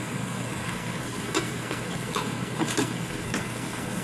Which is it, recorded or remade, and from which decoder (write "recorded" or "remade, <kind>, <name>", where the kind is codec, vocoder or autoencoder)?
remade, codec, SNAC